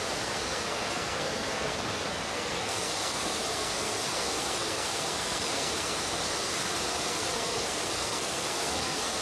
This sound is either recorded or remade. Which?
remade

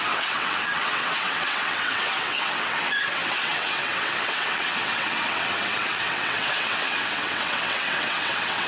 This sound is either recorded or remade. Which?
remade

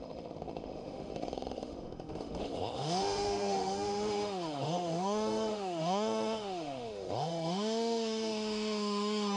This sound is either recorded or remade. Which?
remade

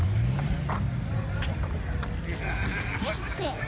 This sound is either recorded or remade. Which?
recorded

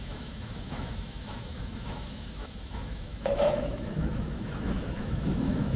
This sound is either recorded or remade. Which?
remade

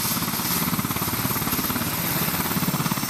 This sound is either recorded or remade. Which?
recorded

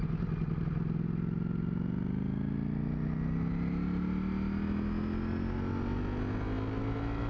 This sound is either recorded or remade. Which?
recorded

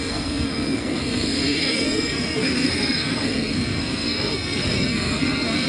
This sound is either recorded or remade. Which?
remade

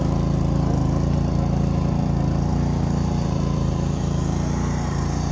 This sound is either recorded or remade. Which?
remade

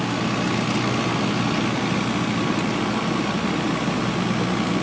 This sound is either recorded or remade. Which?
recorded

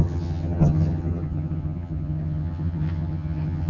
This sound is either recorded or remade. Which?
remade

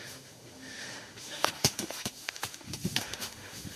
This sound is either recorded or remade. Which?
remade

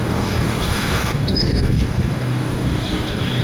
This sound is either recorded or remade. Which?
remade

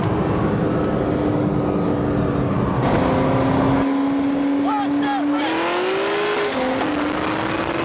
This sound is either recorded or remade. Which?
recorded